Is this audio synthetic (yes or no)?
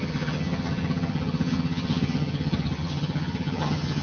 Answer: yes